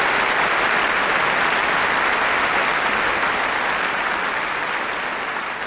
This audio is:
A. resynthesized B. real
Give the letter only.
B